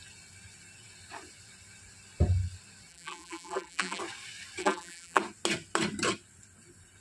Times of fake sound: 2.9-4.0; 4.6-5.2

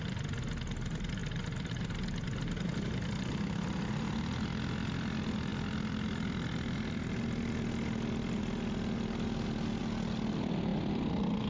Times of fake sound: none

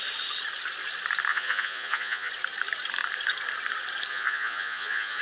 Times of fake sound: 1.3-2.3; 4.1-5.2

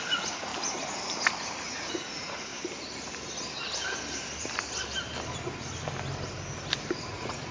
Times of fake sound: 0.0-0.5; 1.7-2.5; 7.0-7.5

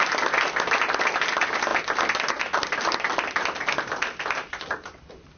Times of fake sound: none

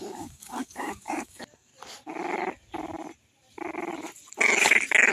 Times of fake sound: 0.0-1.7

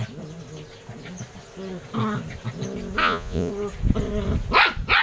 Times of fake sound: 3.0-3.5

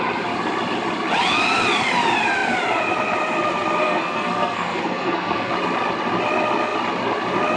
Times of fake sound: 3.8-5.5